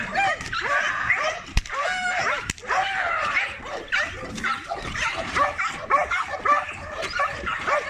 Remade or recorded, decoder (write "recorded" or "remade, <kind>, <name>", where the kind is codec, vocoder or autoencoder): remade, vocoder, BigVGAN v2